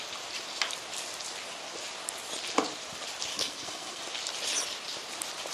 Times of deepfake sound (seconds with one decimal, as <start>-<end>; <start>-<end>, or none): 3.3-4.0

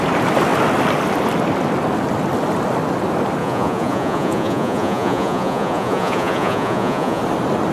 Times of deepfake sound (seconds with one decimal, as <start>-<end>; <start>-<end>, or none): 3.4-7.2